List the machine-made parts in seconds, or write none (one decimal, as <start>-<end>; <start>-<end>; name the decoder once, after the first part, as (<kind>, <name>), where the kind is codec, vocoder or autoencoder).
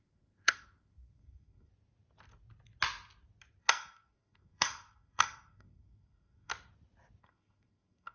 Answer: 0.0-1.7 (codec, SNAC); 3.6-6.5; 7.2-8.1